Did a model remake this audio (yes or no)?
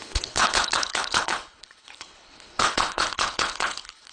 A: yes